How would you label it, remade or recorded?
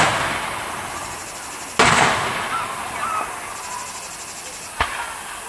recorded